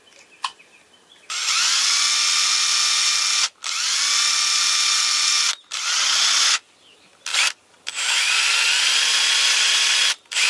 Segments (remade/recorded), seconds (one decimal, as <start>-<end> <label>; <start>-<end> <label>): 0.0-10.5 recorded